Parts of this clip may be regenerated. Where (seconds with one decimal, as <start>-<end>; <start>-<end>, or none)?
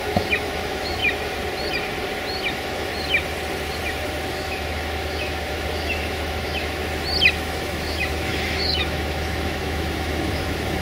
0.0-1.0; 2.5-2.9; 4.3-6.8; 7.3-10.8